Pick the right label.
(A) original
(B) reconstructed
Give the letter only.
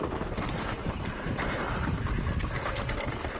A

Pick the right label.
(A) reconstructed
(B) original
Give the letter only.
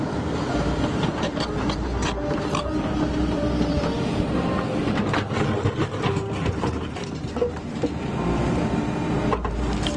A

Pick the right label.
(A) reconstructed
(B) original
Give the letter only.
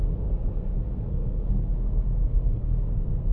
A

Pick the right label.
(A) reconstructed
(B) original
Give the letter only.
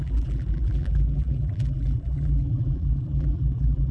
A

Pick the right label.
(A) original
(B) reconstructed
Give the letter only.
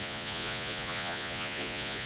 B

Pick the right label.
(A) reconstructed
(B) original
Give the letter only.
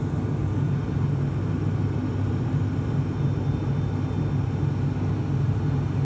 B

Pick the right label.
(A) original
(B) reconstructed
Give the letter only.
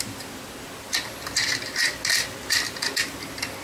A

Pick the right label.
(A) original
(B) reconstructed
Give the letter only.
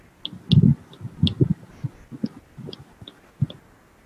A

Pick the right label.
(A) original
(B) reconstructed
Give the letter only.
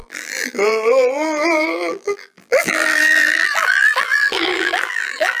B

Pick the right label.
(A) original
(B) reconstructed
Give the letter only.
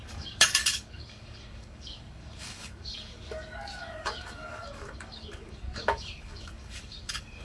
B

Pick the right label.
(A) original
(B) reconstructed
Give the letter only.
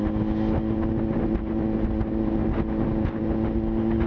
A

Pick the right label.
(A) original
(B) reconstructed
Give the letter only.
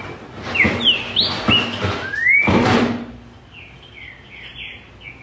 A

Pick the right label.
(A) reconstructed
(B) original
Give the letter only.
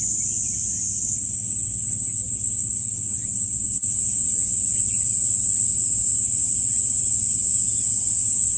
B